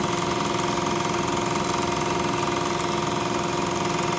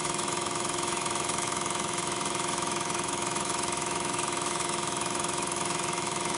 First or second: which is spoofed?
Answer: second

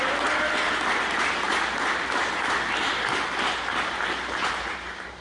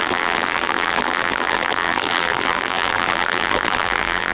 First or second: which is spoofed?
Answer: second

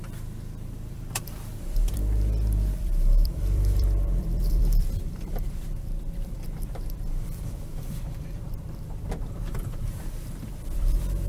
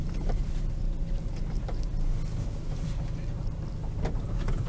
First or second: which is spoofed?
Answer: first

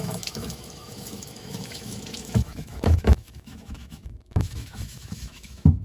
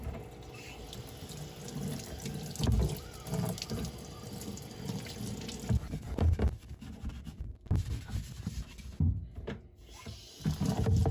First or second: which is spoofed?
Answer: first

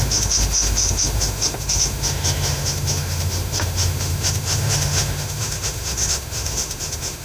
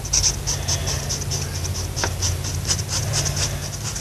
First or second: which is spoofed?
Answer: first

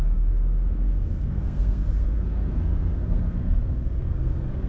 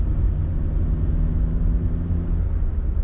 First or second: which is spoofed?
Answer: first